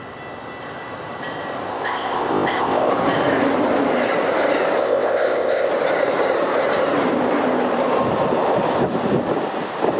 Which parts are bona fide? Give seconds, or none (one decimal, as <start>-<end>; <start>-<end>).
0.0-1.7; 2.9-4.8; 5.7-10.0